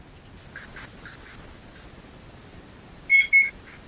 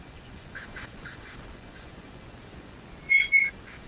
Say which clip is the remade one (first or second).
second